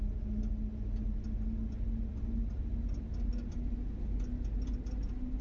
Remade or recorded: recorded